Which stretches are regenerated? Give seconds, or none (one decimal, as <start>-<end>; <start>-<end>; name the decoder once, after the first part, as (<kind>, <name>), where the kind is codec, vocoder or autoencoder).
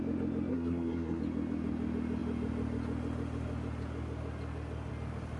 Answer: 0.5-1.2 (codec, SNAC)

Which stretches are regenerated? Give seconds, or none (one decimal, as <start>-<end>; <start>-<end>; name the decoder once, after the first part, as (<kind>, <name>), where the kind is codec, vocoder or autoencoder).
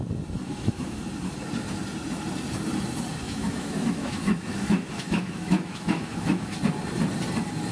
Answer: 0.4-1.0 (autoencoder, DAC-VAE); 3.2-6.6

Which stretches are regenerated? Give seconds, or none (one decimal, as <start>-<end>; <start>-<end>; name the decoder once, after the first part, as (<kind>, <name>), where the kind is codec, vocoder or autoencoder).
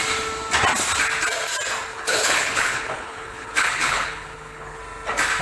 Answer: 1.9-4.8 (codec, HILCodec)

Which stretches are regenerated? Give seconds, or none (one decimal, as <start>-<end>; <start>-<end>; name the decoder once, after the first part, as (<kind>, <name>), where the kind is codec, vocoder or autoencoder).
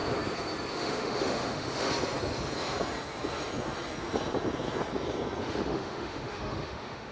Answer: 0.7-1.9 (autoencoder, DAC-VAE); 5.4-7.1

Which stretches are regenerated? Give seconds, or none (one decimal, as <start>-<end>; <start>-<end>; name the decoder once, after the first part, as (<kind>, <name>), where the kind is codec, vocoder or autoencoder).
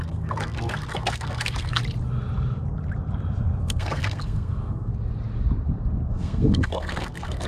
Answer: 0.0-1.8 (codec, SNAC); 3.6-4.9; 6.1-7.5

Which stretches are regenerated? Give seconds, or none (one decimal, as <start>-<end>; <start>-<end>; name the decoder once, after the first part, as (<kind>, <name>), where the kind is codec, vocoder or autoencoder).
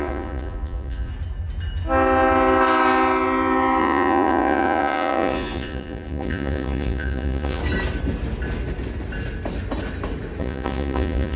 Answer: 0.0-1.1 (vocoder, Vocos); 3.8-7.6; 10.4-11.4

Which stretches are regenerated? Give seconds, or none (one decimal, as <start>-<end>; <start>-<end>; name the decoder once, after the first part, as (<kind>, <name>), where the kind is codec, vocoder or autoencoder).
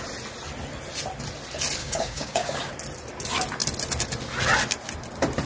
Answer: 1.8-2.7 (codec, DAC)